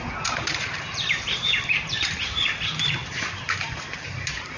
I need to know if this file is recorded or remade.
remade